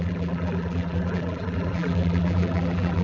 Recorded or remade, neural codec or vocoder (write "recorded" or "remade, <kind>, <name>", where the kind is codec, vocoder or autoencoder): remade, vocoder, BigVGAN v2